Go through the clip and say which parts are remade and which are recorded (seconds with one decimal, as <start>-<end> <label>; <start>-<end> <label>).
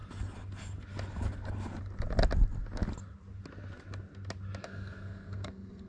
0.0-4.6 recorded; 4.6-5.9 remade